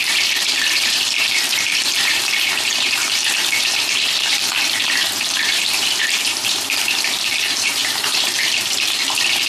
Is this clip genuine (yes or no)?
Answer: no